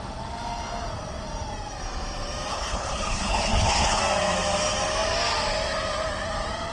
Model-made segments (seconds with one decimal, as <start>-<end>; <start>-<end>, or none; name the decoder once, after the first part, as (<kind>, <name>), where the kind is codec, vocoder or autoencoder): 2.5-4.0 (codec, HILCodec)